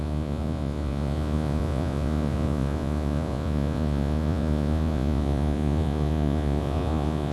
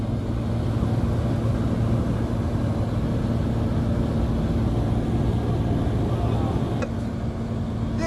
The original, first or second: second